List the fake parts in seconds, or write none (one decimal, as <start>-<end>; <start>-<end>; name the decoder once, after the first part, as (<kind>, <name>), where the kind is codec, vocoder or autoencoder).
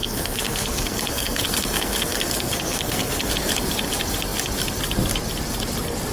0.0-3.3 (codec, SNAC)